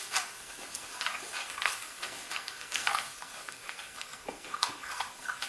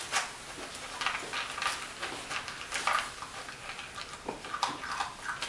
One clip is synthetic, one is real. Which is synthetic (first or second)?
first